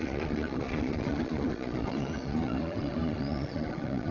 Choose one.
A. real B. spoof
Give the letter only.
B